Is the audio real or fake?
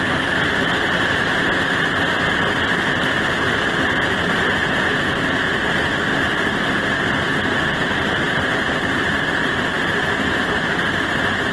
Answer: real